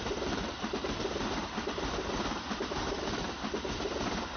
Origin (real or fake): fake